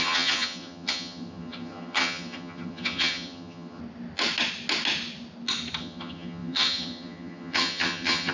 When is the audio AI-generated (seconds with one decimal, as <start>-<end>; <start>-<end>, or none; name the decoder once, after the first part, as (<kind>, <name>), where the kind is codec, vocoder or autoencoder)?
0.0-3.8 (vocoder, HiFi-GAN); 5.8-8.3